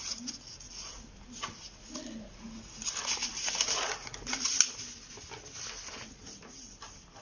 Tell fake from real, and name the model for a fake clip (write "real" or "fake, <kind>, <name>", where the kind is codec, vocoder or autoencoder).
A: real